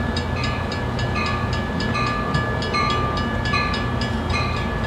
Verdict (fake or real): real